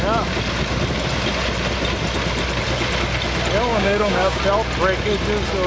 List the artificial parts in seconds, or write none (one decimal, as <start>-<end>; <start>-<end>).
3.7-4.4